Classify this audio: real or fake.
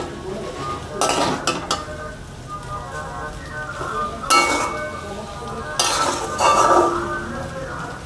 real